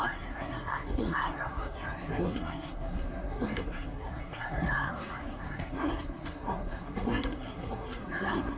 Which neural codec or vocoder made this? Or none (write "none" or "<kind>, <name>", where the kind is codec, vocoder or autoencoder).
codec, SNAC